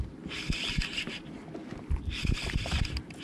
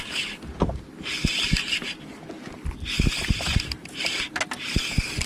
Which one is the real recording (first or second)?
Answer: second